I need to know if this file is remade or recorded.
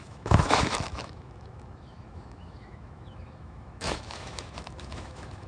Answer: remade